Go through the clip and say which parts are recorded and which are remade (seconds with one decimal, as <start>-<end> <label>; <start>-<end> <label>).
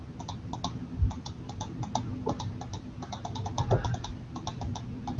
0.0-5.2 recorded